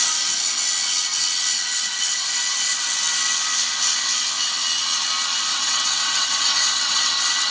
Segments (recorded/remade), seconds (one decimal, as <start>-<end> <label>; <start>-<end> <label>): 0.0-5.5 recorded; 5.5-7.1 remade; 7.1-7.5 recorded